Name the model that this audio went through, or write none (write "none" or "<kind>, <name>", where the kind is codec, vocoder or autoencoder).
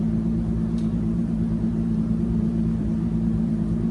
vocoder, BigVGAN v2